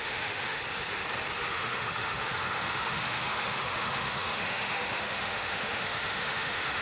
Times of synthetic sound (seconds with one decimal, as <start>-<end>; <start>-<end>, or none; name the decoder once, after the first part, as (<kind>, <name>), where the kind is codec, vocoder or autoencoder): 0.0-0.6 (autoencoder, DAC-VAE); 1.5-6.8